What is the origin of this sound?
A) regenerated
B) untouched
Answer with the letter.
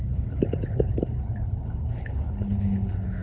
A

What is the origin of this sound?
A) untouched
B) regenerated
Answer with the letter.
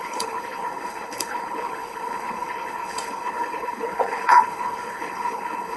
B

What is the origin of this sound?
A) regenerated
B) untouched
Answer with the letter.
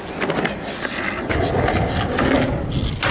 B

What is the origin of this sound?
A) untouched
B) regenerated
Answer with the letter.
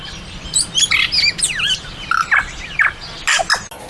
A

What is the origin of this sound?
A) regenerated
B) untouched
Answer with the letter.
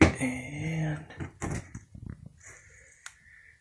B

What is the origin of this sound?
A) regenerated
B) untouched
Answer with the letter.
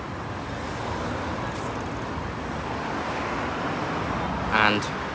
B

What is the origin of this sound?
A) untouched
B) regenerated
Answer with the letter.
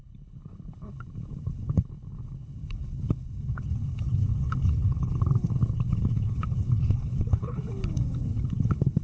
B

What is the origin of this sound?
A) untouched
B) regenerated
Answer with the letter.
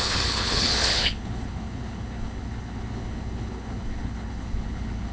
B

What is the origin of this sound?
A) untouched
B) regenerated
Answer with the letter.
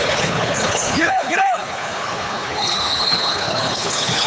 B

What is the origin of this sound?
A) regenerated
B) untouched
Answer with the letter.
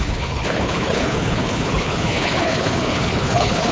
A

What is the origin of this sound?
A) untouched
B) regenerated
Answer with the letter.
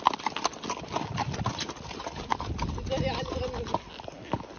A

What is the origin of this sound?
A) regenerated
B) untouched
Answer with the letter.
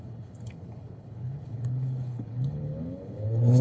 A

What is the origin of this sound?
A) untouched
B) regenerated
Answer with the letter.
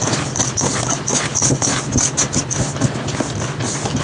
A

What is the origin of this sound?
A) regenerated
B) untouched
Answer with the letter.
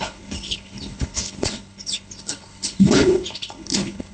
A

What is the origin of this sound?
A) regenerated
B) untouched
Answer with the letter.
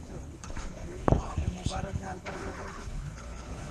A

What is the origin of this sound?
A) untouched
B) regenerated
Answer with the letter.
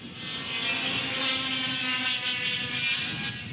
A